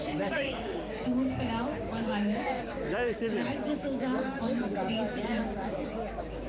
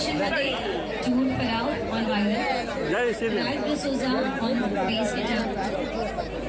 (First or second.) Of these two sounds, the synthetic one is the first